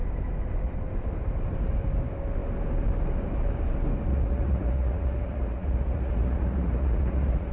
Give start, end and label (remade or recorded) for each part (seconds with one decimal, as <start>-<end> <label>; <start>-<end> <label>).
0.0-4.1 recorded; 4.1-7.5 remade